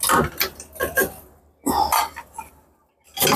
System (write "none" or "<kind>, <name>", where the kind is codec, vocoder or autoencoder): none